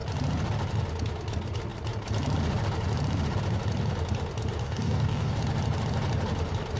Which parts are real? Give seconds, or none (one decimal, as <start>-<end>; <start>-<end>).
0.0-4.6; 5.4-6.8